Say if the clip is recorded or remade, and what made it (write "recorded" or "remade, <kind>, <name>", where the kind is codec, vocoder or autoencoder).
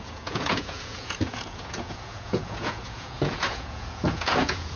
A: remade, vocoder, Vocos